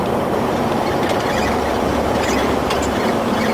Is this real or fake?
fake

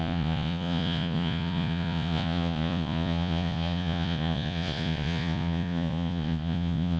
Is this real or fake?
fake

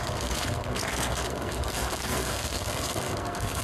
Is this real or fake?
fake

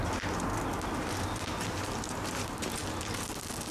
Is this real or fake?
real